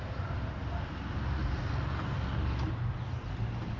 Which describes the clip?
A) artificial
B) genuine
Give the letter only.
B